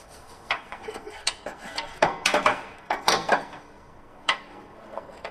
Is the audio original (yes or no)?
no